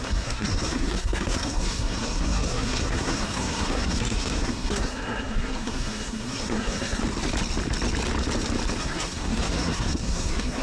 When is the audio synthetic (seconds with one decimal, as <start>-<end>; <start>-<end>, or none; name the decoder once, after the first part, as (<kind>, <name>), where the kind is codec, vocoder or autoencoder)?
0.0-7.0 (codec, SNAC); 8.8-10.6